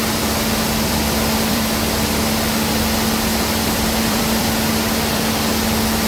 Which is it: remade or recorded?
remade